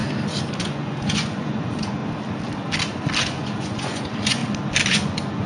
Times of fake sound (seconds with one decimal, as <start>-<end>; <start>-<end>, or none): 0.6-2.0; 3.2-4.4; 4.9-5.5